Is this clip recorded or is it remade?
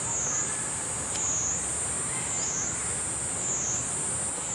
recorded